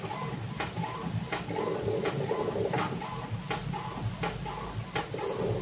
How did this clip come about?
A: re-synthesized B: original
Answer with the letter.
B